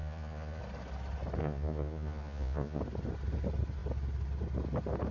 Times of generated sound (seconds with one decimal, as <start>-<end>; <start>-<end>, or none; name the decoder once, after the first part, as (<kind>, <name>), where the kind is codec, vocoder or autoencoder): 0.0-0.6 (vocoder, Vocos); 1.4-2.8